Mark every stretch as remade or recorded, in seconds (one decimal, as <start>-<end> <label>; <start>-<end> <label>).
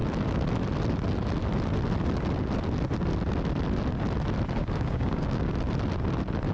0.0-4.6 recorded; 4.6-5.5 remade; 5.5-6.5 recorded